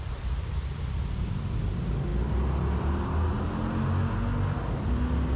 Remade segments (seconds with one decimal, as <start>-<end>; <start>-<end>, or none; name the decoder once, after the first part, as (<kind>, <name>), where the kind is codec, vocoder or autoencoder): none